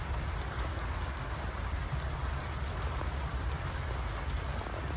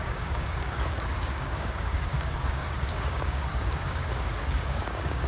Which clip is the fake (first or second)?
second